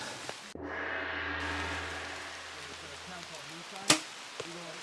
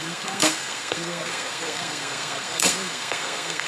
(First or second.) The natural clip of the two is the first